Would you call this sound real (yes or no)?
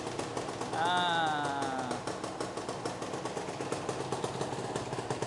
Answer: yes